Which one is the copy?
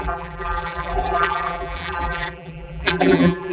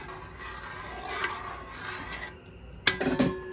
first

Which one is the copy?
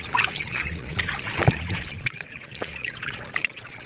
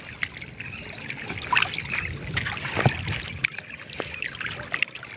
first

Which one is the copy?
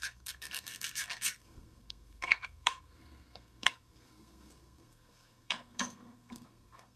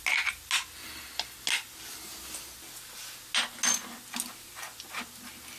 first